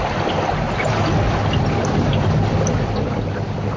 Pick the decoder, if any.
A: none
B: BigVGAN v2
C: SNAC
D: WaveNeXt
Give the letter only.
A